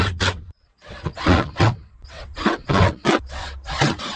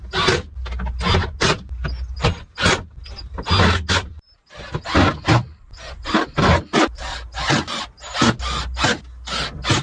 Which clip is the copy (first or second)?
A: first